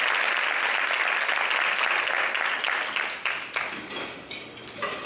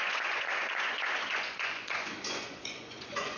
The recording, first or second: first